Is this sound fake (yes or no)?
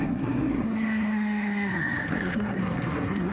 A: yes